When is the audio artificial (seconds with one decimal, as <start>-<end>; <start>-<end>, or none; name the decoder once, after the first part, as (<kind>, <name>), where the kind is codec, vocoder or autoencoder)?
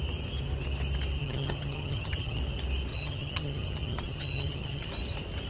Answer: 1.2-2.4 (vocoder, HiFi-GAN); 2.9-4.9